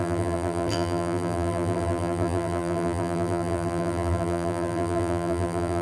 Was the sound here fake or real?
fake